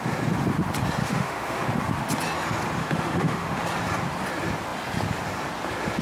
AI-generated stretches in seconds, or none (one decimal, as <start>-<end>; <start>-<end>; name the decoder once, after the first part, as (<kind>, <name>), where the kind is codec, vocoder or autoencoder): 1.0-1.6 (autoencoder, DAC-VAE); 2.8-3.6